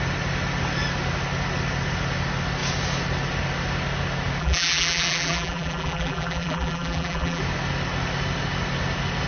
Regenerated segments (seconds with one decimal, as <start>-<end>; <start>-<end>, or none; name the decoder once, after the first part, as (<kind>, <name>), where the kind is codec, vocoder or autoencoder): 4.4-7.4 (vocoder, BigVGAN v2)